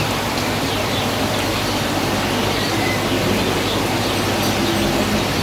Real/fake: real